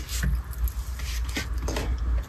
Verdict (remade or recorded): recorded